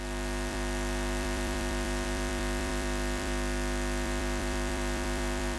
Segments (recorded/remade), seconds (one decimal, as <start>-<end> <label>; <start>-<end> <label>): 0.0-5.6 remade